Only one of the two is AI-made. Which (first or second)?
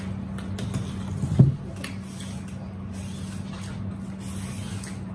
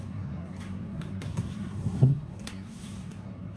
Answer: second